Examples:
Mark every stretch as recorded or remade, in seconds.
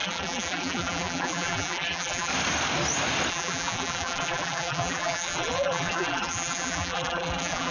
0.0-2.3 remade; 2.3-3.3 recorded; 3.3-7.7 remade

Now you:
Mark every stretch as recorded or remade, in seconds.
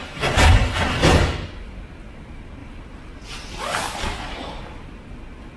0.0-2.6 recorded; 2.6-3.6 remade; 3.6-5.6 recorded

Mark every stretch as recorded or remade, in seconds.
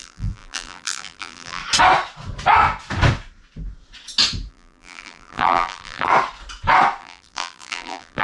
0.0-1.6 remade; 1.6-4.5 recorded; 4.5-6.1 remade; 6.1-7.0 recorded; 7.0-8.2 remade